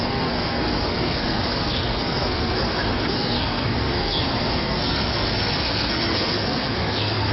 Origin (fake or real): fake